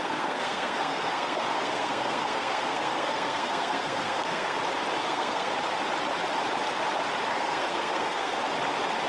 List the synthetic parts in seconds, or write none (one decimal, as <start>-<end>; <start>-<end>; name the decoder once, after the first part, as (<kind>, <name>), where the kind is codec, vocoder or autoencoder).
0.0-4.6 (codec, SNAC); 5.0-5.5; 7.3-8.4